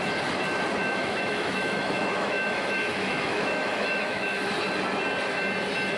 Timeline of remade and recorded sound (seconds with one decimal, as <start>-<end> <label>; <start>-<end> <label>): 0.0-0.8 recorded; 0.8-4.4 remade; 4.4-6.0 recorded

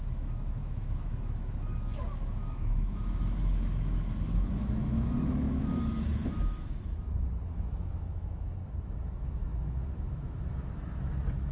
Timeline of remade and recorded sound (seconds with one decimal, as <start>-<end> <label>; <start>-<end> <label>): 0.0-11.5 remade